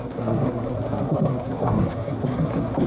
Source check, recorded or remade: remade